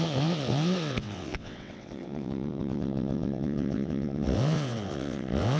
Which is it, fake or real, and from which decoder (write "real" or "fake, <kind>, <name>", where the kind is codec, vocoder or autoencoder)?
fake, vocoder, WaveNeXt